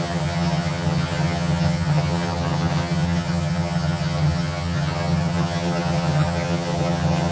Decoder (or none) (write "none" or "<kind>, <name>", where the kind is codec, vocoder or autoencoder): vocoder, HiFi-GAN